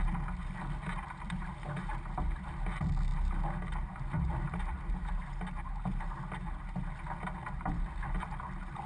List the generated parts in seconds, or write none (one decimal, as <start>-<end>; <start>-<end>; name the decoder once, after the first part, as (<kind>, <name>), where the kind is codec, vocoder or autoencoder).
none